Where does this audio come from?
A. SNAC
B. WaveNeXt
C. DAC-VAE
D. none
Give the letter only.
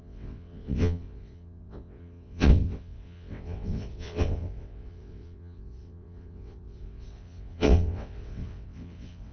B